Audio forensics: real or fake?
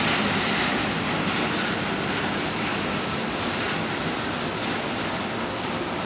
real